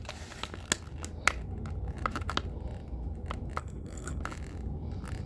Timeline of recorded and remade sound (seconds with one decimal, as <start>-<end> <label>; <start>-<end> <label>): 0.0-3.6 recorded; 3.6-4.2 remade; 4.2-5.3 recorded